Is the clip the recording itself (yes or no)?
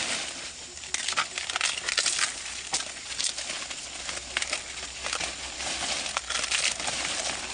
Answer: yes